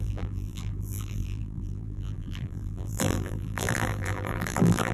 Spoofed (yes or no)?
yes